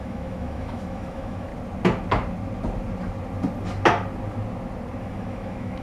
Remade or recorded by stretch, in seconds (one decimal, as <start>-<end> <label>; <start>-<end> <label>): 0.0-1.5 remade; 1.5-5.0 recorded; 5.0-5.8 remade